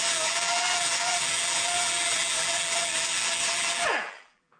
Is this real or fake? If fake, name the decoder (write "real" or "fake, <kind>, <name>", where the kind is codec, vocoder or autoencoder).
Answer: fake, vocoder, BigVGAN v2